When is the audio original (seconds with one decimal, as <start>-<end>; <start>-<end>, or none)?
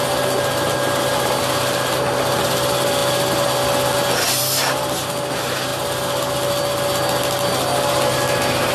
0.0-8.7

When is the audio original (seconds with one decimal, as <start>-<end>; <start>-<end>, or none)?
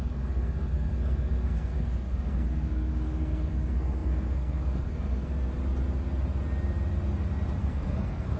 5.3-7.6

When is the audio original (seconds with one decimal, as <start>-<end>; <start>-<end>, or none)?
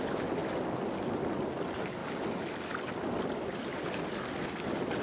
0.0-5.0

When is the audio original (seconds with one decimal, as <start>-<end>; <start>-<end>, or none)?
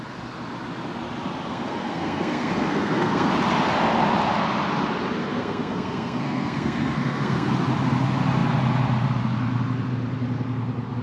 0.0-1.5; 3.3-5.2; 7.5-11.0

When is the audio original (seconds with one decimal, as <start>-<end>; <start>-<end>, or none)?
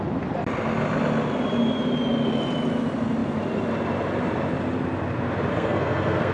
0.0-5.5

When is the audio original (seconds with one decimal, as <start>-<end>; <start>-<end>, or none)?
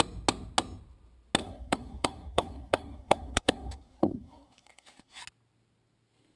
0.0-1.4; 5.2-6.4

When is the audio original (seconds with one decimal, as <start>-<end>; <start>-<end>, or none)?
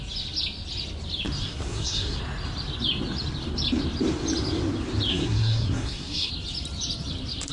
0.0-1.4; 2.2-5.1; 6.3-7.5